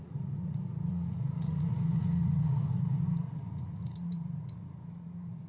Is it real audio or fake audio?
fake